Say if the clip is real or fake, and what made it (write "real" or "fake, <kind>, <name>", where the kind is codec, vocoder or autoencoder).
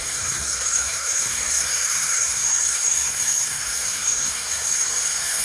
fake, codec, SNAC